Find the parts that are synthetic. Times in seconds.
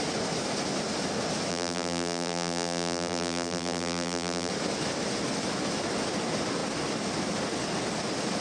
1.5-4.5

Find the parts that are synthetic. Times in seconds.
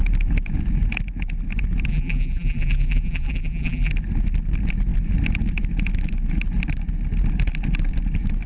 1.9-3.9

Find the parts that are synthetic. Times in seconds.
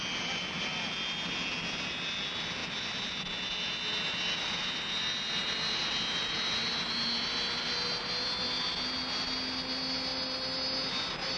none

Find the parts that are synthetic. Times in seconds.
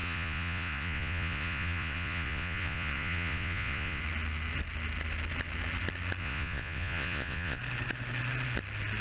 0.0-4.0; 6.2-7.6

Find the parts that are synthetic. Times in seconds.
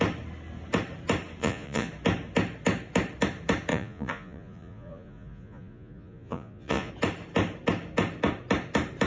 1.4-1.9; 3.7-6.9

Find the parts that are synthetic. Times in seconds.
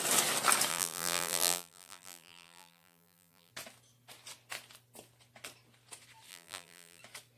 0.7-3.5; 6.3-7.0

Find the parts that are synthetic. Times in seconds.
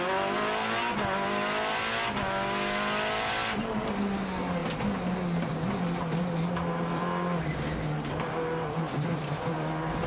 none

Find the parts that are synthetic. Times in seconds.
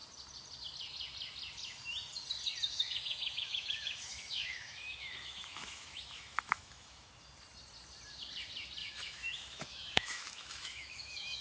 2.7-7.1; 8.8-11.4